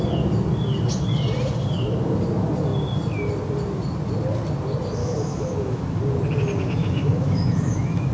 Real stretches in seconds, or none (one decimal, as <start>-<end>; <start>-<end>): 0.0-5.0; 6.0-6.8